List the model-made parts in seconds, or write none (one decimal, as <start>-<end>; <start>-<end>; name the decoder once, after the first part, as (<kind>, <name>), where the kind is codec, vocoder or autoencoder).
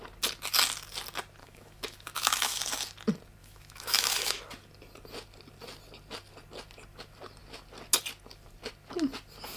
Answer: 1.4-2.7 (autoencoder, DAC-VAE); 3.4-4.4